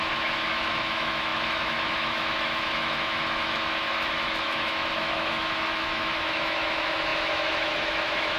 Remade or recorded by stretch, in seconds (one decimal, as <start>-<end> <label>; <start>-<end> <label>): 0.0-8.4 remade